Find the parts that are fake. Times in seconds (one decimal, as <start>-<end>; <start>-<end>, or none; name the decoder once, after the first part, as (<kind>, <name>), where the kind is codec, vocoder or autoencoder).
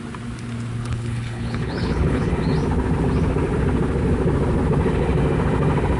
0.8-2.3 (codec, HILCodec)